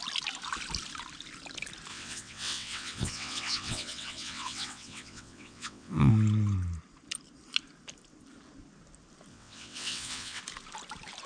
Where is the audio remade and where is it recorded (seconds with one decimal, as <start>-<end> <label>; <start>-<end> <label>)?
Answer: 0.0-1.9 recorded; 1.9-6.1 remade; 6.1-9.3 recorded; 9.3-10.4 remade; 10.4-11.3 recorded